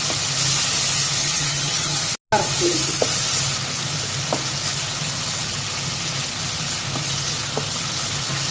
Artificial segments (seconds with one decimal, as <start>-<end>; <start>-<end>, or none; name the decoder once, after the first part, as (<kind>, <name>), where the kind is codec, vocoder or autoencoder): 1.2-2.0 (vocoder, HiFi-GAN)